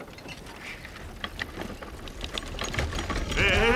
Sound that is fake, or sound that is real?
real